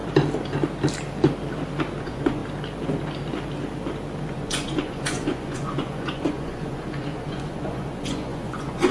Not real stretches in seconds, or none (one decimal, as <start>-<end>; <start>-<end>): 2.0-2.4; 4.3-8.9